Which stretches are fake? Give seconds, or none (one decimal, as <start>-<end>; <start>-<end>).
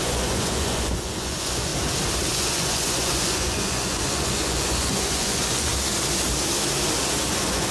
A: 0.0-1.7; 2.3-5.7; 7.2-7.7